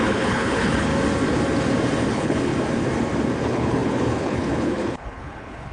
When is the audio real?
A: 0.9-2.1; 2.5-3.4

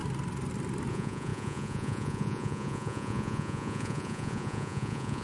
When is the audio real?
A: 0.0-0.9

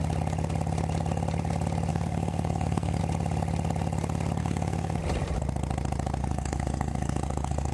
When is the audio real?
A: 0.0-1.9; 3.0-4.4; 5.0-6.2

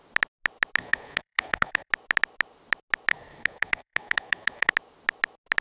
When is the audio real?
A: 0.0-0.8; 1.9-3.1; 4.7-5.6